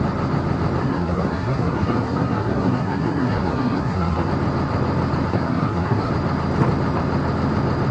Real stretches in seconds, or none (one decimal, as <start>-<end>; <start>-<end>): 0.0-0.8; 4.3-5.3; 6.1-7.9